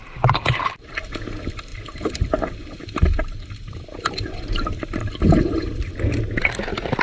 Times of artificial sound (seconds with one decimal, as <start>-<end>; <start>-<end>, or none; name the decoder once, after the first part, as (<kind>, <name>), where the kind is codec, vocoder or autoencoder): 0.0-1.0 (vocoder, BigVGAN v2); 1.7-5.9